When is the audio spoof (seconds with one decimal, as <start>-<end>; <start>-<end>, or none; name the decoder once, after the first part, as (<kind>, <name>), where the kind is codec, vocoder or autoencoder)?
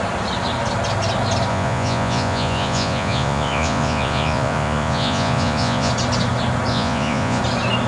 1.5-5.9 (vocoder, Vocos); 6.7-7.4